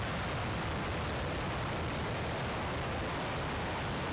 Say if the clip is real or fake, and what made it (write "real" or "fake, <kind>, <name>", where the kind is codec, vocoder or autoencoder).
real